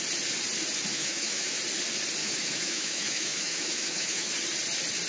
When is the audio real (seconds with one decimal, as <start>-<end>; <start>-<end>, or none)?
0.0-0.9; 1.6-2.2; 4.3-5.1